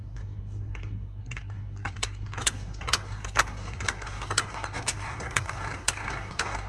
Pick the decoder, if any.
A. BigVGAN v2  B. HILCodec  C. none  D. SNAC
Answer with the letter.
D